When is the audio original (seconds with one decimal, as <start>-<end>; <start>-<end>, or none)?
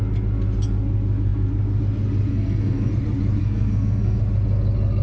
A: 0.0-2.3; 2.9-3.4; 4.2-5.0